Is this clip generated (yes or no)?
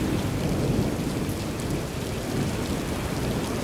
no